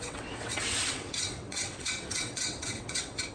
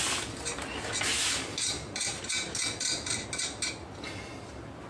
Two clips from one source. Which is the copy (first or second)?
first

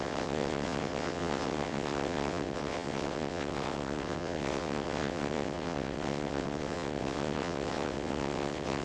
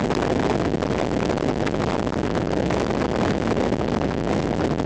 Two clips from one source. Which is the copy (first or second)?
first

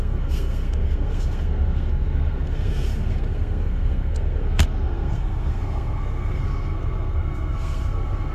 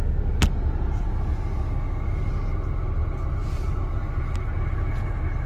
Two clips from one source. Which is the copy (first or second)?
first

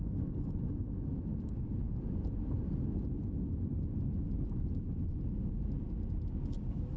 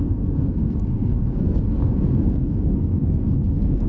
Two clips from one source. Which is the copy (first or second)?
second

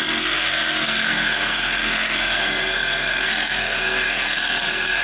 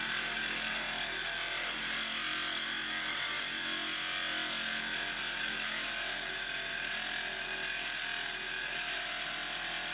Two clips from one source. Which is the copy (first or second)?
first